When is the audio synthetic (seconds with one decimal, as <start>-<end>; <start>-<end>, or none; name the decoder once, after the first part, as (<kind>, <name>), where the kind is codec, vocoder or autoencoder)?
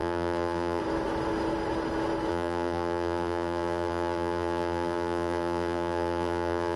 0.0-0.8 (vocoder, BigVGAN v2); 2.3-6.8